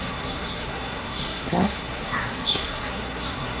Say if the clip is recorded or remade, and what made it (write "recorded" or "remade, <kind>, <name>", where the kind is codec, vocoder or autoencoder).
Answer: remade, codec, SNAC